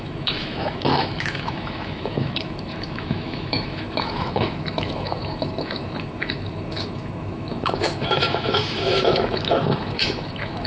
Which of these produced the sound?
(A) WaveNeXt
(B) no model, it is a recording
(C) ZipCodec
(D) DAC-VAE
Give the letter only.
D